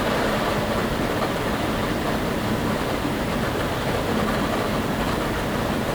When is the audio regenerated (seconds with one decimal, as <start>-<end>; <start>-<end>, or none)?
0.0-5.9